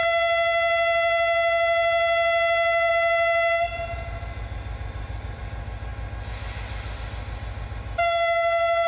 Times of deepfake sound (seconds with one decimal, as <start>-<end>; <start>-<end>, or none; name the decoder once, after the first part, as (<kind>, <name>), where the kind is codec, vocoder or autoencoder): 3.7-5.4 (vocoder, BigVGAN v2)